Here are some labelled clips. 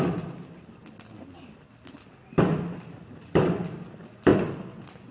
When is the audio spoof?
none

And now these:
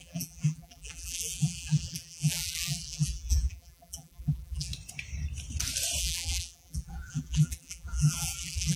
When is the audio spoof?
0.0-4.7 (vocoder, BigVGAN v2); 6.0-8.8

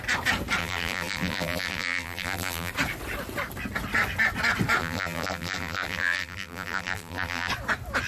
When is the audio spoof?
0.6-2.7 (vocoder, BigVGAN v2); 4.8-7.5